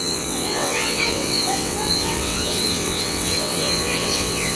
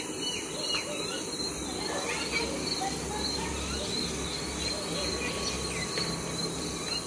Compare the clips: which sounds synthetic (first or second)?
first